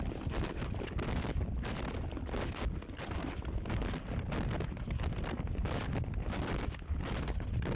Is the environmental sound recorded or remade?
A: recorded